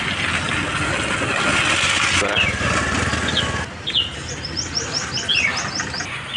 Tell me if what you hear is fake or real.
real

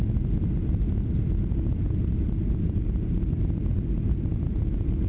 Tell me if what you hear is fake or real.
real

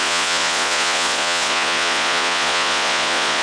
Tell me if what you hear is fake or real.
fake